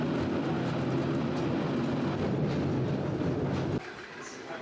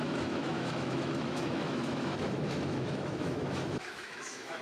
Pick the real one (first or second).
first